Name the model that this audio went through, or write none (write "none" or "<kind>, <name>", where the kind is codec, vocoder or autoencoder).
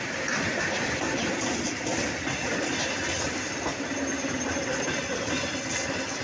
vocoder, BigVGAN v2